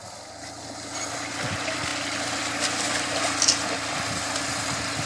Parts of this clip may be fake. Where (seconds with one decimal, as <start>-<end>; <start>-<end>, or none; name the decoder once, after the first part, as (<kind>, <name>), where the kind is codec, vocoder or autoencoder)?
none